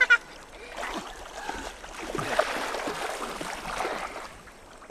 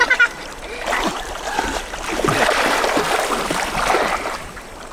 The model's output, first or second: second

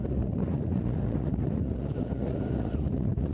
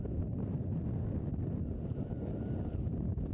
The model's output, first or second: first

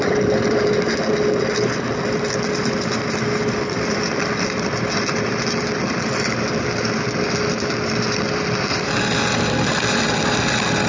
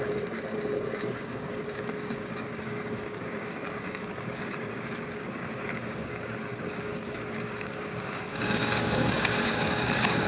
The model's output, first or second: second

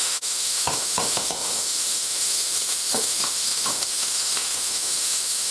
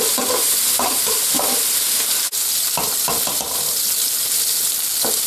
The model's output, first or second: first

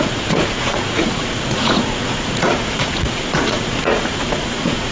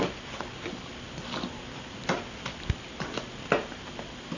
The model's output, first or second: first